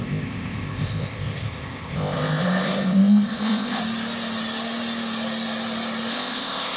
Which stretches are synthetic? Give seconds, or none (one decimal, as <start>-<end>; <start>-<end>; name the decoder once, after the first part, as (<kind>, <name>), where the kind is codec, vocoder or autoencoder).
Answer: 0.0-3.8 (codec, ZipCodec); 6.1-6.8